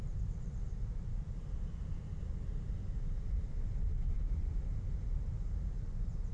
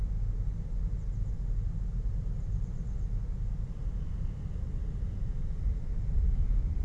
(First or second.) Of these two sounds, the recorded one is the second